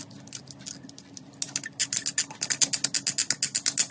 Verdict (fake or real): real